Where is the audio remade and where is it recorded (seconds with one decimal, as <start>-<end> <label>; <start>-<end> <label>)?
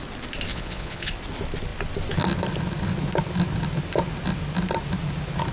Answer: 0.0-0.5 recorded; 0.5-1.1 remade; 1.1-5.5 recorded